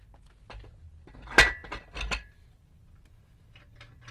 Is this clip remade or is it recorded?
recorded